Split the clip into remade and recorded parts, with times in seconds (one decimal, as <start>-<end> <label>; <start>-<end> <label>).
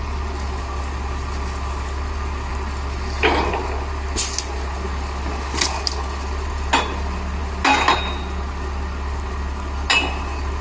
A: 0.0-10.6 recorded